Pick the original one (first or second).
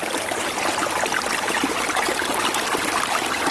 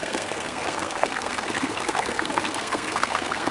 first